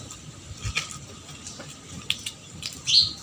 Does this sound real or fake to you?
real